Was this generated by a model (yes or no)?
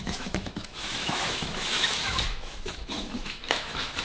yes